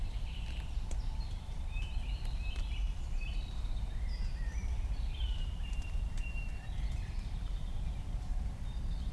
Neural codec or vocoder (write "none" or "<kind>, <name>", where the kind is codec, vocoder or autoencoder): vocoder, BigVGAN v2